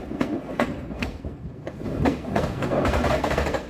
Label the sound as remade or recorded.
remade